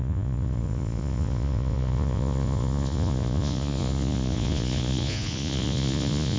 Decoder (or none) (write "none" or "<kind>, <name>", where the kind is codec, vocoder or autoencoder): vocoder, Vocos